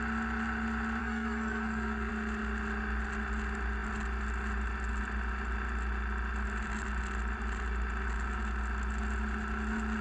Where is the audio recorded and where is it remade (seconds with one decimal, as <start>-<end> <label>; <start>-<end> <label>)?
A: 0.0-1.0 recorded; 1.0-2.1 remade; 2.1-10.0 recorded